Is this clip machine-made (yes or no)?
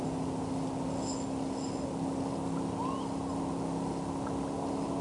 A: no